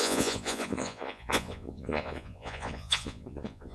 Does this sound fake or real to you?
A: fake